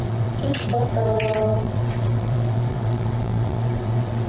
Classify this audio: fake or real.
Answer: fake